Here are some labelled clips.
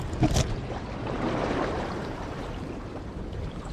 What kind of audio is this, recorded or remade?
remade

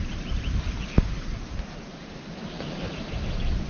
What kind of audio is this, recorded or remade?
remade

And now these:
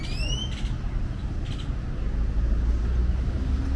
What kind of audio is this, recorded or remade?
recorded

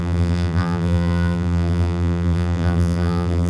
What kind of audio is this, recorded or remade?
remade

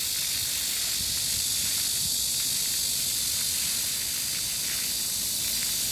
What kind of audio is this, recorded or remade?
recorded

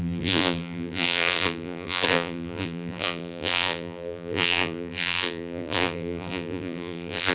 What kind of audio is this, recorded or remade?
remade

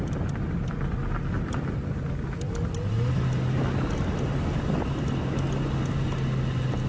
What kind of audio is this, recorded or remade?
recorded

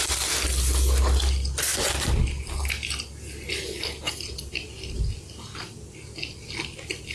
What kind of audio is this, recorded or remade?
recorded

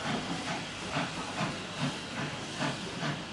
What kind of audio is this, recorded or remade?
remade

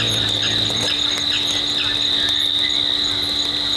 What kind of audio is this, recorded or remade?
recorded